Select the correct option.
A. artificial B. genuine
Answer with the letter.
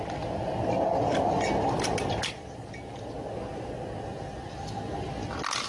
B